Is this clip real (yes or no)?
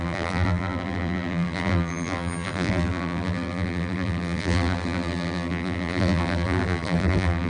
no